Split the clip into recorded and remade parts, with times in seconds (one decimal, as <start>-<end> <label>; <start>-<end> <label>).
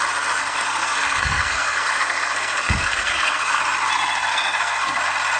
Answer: 0.0-0.4 recorded; 0.4-3.6 remade; 3.6-4.3 recorded; 4.3-5.0 remade; 5.0-5.4 recorded